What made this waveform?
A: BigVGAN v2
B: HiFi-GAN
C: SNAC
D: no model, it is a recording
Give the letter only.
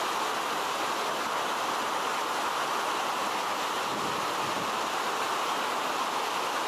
D